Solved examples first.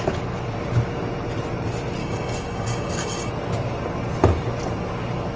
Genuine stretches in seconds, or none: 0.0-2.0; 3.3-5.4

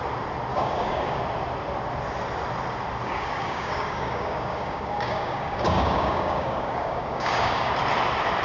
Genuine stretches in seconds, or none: 0.0-0.5; 1.2-3.0; 7.7-8.4

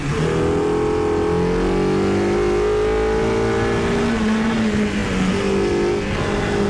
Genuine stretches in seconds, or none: 0.0-6.7

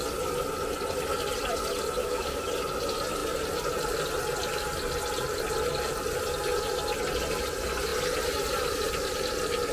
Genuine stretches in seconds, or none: 0.0-2.0; 2.5-9.7

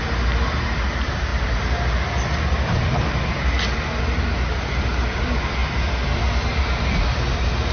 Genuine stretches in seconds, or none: 0.0-7.7

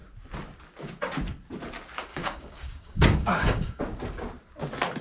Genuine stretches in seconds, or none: 0.0-2.1; 3.8-5.0